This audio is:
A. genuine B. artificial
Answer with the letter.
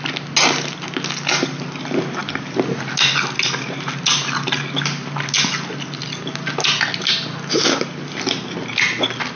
A